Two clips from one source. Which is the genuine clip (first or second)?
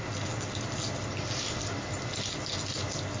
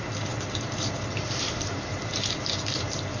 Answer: first